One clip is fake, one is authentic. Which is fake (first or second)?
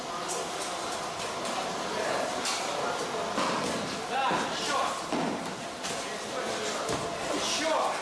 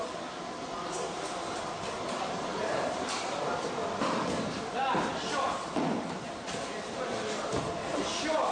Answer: second